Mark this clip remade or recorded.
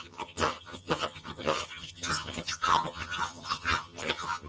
remade